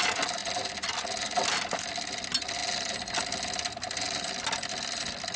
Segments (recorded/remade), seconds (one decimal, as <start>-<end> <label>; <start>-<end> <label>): 0.0-5.4 recorded